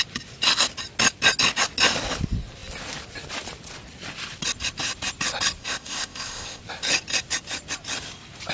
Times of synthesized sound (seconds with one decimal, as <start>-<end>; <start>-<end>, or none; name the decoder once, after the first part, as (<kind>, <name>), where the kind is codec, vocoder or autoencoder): 5.6-6.6 (codec, ZipCodec)